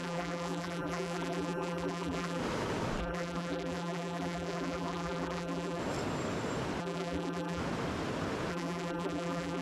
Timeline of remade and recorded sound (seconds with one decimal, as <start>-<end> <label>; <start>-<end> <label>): 0.0-2.4 remade; 2.4-3.0 recorded; 3.0-5.8 remade; 5.8-6.8 recorded; 6.8-7.6 remade; 7.6-8.5 recorded; 8.5-9.6 remade